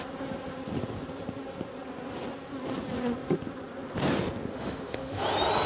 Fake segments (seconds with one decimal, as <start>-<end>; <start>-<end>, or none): 4.5-5.2